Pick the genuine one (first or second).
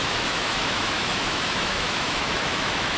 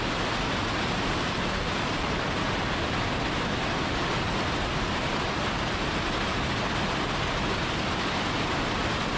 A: second